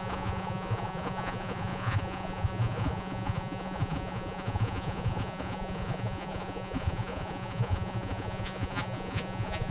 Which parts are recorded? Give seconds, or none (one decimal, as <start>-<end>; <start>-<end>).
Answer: none